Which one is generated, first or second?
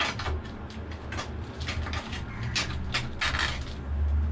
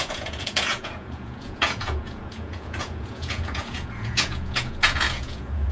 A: second